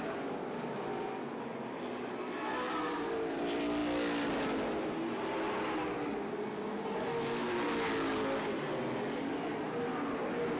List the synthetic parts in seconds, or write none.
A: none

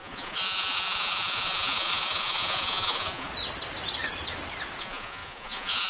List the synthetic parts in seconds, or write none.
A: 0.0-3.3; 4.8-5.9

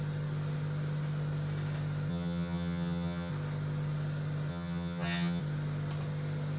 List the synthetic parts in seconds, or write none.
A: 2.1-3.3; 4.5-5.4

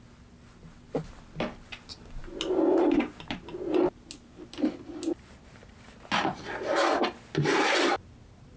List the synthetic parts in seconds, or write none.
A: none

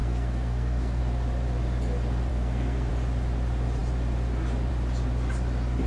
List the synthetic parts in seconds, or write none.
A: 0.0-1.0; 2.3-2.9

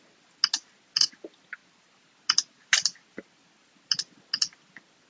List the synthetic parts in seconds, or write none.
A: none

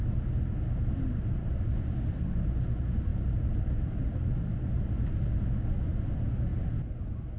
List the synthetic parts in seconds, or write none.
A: 1.7-2.4; 3.1-4.7